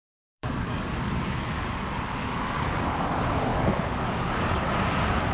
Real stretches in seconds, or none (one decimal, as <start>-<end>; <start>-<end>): 3.1-3.5; 4.7-5.3